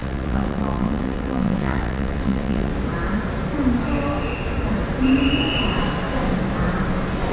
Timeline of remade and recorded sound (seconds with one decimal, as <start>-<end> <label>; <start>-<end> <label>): 0.0-2.7 remade; 2.7-7.3 recorded